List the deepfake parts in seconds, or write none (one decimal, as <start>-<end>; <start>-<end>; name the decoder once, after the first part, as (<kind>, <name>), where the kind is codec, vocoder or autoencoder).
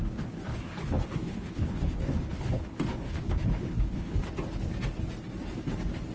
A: 0.5-4.2 (codec, HILCodec)